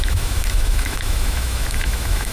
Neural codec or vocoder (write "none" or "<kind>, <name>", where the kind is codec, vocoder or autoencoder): autoencoder, DAC-VAE